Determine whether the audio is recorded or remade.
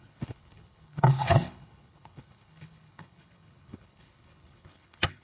remade